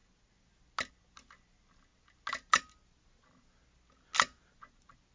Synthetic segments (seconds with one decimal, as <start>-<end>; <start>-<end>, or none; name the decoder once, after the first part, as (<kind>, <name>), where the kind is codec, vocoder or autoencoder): none